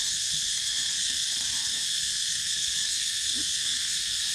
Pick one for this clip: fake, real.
fake